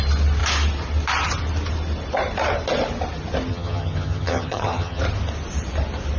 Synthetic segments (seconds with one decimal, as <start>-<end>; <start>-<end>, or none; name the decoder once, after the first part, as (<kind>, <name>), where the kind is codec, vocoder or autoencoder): 3.5-5.0 (vocoder, HiFi-GAN)